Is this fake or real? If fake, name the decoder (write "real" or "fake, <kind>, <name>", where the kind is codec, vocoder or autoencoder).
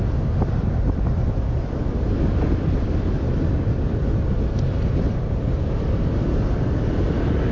real